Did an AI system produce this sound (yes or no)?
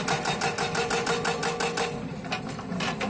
no